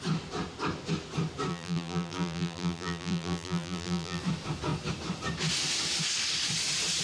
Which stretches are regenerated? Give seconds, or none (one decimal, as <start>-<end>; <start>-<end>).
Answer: 1.5-4.2